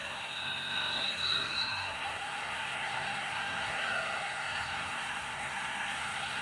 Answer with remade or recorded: remade